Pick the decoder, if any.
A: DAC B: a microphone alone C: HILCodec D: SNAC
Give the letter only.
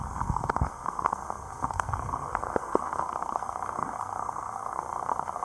D